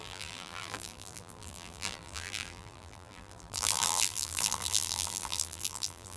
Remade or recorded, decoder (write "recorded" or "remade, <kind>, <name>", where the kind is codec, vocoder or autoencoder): remade, vocoder, BigVGAN v2